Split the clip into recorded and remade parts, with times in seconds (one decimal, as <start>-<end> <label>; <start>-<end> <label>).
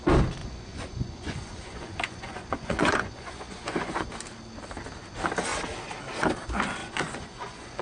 0.0-0.4 recorded; 0.4-4.1 remade; 4.1-6.8 recorded; 6.8-7.8 remade